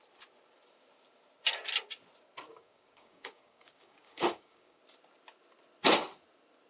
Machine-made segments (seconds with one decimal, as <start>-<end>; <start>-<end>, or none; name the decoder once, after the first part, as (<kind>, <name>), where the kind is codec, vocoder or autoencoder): 2.5-4.8 (codec, DAC)